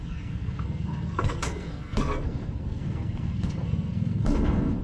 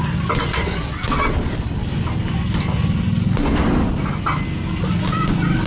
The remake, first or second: first